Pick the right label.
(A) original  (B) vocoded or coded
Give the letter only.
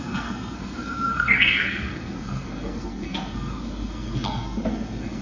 B